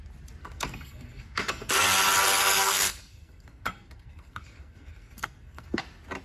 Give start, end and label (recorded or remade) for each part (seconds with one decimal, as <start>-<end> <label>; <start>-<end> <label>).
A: 0.0-0.4 recorded; 0.4-1.7 remade; 1.7-2.4 recorded; 2.4-5.8 remade; 5.8-6.2 recorded